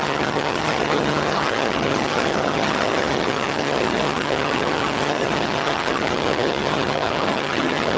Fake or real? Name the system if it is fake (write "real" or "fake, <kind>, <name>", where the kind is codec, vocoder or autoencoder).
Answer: fake, vocoder, HiFi-GAN